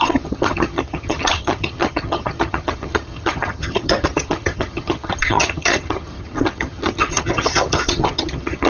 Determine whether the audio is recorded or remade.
remade